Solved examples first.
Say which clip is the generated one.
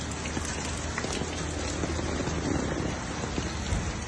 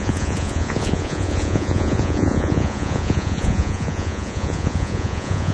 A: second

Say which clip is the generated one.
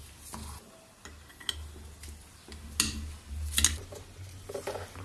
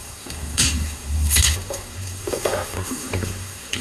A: second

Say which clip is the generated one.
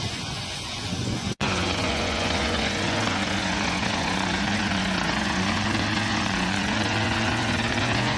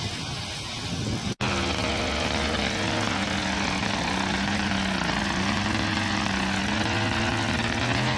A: first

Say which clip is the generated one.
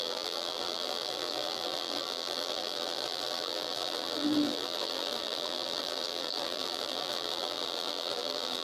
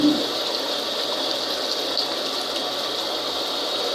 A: first